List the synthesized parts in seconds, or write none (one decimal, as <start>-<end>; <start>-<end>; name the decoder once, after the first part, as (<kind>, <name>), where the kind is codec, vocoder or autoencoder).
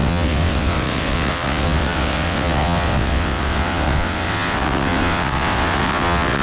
0.0-6.4 (vocoder, WaveNeXt)